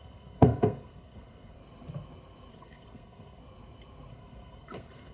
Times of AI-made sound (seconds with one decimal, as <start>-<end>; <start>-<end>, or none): 0.0-1.6; 2.5-3.4; 4.1-5.1